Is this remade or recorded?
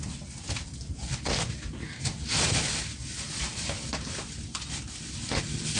recorded